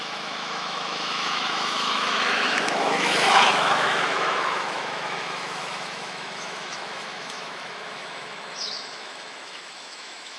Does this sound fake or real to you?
fake